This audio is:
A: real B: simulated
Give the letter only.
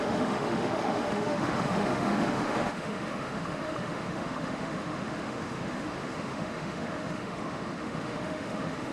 B